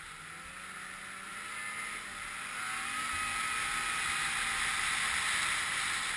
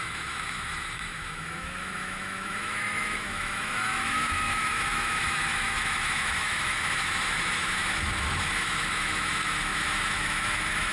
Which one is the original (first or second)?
first